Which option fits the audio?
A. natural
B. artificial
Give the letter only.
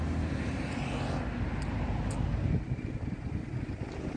A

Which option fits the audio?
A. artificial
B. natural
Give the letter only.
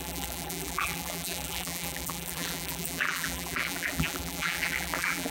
A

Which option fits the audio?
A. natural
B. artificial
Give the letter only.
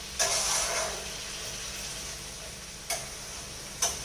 A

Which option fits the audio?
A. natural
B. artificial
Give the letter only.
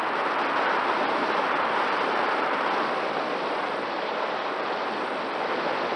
B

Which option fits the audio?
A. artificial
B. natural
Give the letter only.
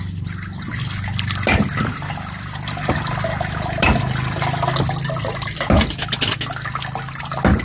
B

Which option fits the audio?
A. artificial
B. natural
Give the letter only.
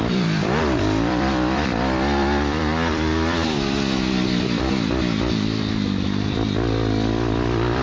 A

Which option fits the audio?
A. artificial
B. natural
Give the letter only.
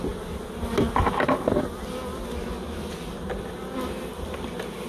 B